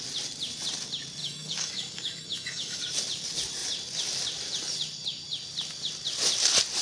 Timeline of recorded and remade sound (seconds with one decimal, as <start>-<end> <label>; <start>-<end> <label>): 0.0-1.2 recorded; 1.2-2.8 remade; 2.8-6.8 recorded